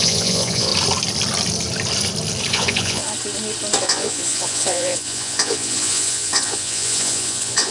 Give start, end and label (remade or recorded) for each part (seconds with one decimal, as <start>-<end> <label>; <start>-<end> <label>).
0.0-0.7 remade; 0.7-2.5 recorded; 2.5-3.0 remade; 3.0-3.8 recorded; 3.8-7.7 remade